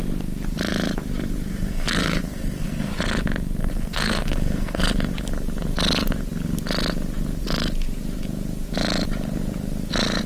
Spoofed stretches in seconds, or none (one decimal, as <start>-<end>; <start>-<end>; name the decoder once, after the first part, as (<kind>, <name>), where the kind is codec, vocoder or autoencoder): 1.5-2.9 (codec, SNAC); 3.6-4.9